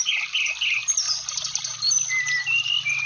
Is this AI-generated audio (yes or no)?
no